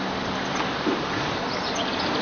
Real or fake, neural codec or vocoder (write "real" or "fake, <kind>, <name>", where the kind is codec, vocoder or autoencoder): real